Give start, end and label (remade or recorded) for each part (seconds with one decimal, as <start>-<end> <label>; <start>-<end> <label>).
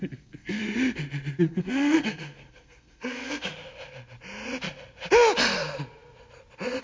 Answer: 0.0-0.6 remade; 0.6-1.4 recorded; 1.4-3.5 remade; 3.5-6.8 recorded